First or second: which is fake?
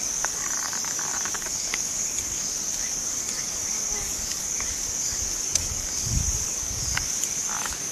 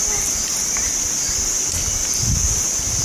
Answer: first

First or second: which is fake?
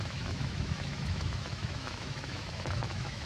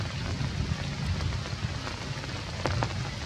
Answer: first